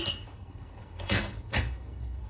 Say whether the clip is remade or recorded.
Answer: remade